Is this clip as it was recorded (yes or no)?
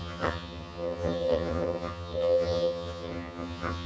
no